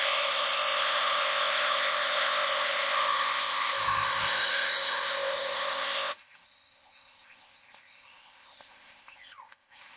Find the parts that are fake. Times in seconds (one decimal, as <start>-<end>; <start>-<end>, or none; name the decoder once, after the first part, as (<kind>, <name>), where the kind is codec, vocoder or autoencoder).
0.0-10.0 (codec, ZipCodec)